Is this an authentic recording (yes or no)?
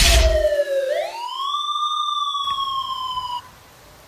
yes